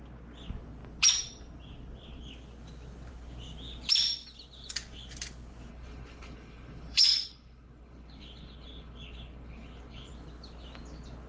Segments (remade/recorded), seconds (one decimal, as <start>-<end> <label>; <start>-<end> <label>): 0.0-5.7 recorded; 5.7-10.1 remade; 10.1-11.3 recorded